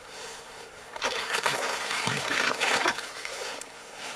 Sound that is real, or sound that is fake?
fake